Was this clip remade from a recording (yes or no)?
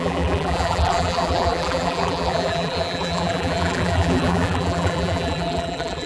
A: yes